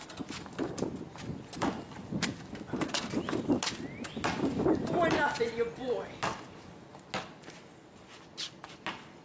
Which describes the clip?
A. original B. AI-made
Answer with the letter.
A